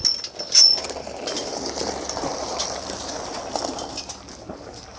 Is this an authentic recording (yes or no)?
yes